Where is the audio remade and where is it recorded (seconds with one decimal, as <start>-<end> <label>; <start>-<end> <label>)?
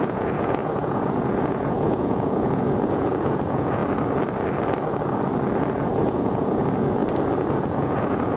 0.0-3.8 remade; 3.8-5.7 recorded; 5.7-7.0 remade; 7.0-7.5 recorded; 7.5-8.4 remade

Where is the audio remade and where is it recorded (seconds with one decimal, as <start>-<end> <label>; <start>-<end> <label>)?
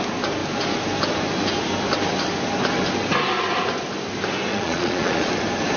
0.0-4.5 recorded; 4.5-5.3 remade; 5.3-5.8 recorded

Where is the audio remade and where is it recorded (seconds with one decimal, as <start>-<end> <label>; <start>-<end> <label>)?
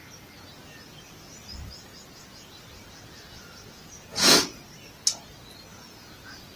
0.0-1.9 recorded; 1.9-2.6 remade; 2.6-4.1 recorded; 4.1-4.6 remade; 4.6-5.7 recorded; 5.7-6.6 remade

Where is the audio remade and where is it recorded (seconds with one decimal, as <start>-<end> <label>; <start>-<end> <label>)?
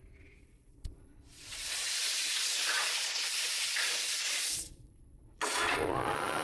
0.0-6.4 remade